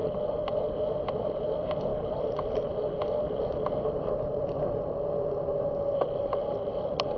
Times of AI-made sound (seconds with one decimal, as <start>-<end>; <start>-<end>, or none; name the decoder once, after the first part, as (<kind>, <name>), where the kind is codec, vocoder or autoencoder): none